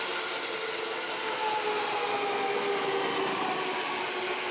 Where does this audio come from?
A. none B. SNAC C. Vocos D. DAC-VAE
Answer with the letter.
A